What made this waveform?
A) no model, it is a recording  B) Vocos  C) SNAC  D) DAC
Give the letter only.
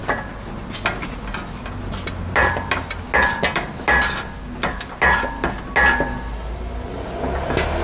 A